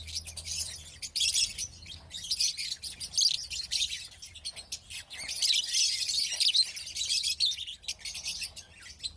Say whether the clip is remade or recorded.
recorded